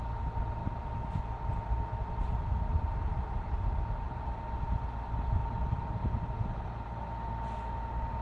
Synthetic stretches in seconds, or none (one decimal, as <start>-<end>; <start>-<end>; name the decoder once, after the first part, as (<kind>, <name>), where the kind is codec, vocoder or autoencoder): 0.6-1.2 (vocoder, BigVGAN v2); 2.7-4.5